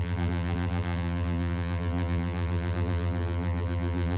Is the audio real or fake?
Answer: fake